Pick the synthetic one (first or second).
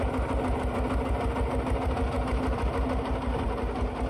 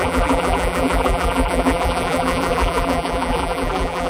second